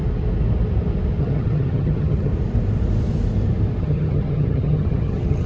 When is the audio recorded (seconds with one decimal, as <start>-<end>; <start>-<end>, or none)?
0.0-1.2; 2.3-3.8